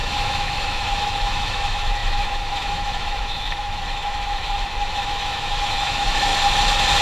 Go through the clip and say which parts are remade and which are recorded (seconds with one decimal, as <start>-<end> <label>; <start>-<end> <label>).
0.0-6.3 remade; 6.3-7.0 recorded